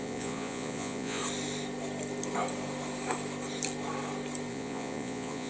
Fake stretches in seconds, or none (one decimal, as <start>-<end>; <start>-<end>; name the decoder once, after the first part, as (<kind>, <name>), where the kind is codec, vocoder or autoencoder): 0.0-1.2 (vocoder, Vocos); 4.5-5.5